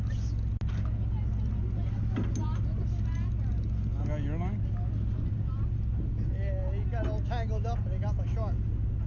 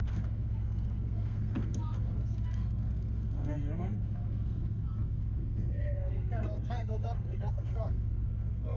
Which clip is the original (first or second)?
first